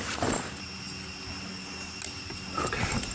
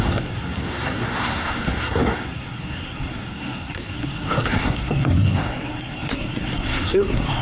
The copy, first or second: second